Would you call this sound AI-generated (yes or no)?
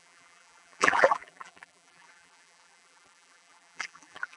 yes